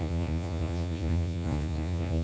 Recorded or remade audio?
remade